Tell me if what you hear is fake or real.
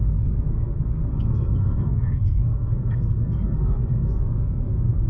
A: fake